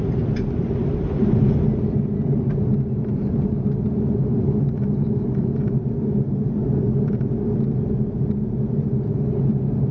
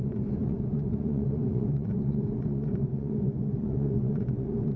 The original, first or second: first